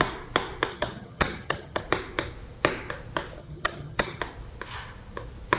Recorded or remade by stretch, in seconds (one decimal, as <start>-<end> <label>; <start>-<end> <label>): 0.0-0.7 recorded; 0.7-1.8 remade; 1.8-3.4 recorded; 3.4-4.2 remade; 4.2-5.6 recorded